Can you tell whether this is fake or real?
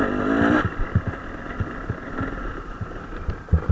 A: real